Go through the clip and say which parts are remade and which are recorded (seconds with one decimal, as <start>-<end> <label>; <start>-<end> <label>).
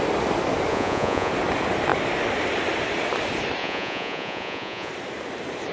0.0-0.7 recorded; 0.7-1.3 remade; 1.3-3.6 recorded; 3.6-4.9 remade; 4.9-5.7 recorded